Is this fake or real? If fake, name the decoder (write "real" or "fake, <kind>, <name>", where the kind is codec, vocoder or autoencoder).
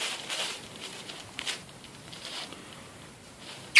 fake, vocoder, BigVGAN v2